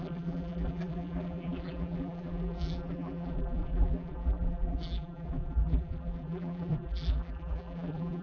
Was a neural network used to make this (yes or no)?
yes